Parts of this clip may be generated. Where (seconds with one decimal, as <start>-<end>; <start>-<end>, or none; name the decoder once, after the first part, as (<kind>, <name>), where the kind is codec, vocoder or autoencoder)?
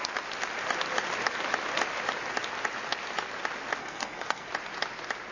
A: 3.8-4.5 (codec, SNAC)